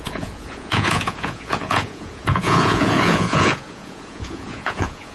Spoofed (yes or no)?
yes